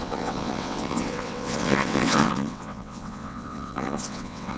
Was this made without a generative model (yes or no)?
no